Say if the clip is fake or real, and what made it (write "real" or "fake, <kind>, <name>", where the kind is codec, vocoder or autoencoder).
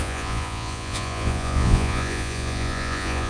fake, vocoder, Vocos